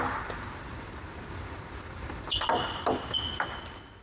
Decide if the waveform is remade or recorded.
recorded